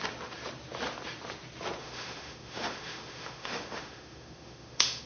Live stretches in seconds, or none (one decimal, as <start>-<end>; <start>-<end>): 0.0-1.8